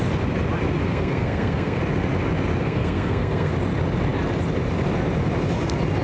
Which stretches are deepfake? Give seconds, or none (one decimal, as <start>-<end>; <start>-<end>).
0.8-1.8; 2.6-3.5